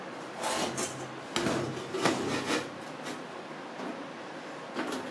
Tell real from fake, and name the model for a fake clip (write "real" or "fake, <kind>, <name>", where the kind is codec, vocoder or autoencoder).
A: real